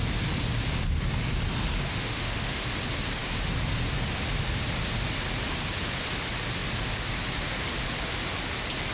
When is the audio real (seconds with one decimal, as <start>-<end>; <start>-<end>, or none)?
0.0-1.9; 2.6-8.9